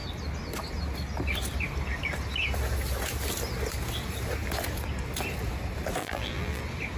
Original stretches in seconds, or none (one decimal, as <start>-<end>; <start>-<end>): 0.0-6.0; 6.6-7.0